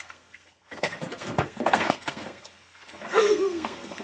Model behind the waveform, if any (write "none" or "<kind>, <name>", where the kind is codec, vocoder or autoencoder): codec, SNAC